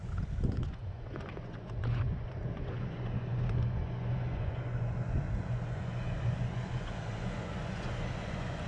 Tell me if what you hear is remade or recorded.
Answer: remade